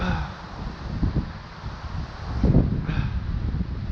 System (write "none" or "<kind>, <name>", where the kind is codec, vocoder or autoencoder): none